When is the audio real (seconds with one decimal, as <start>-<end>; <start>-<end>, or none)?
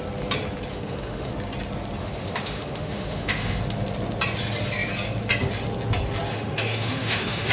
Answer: 0.0-0.7; 1.3-2.0; 3.6-6.3